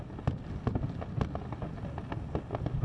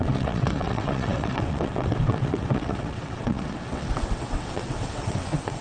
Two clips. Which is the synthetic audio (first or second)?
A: second